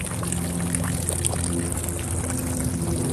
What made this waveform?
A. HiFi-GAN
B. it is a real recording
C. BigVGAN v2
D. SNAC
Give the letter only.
B